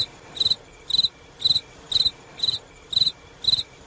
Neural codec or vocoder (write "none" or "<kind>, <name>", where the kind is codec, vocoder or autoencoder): none